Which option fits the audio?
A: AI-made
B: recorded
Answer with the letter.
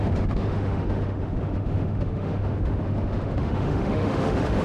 A